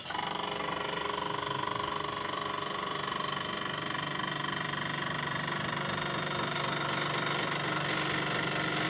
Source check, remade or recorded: recorded